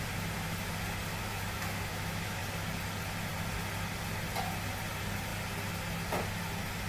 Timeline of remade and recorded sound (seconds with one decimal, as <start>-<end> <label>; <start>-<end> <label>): 0.0-1.3 recorded; 1.3-2.4 remade; 2.4-6.9 recorded